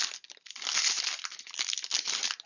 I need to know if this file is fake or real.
real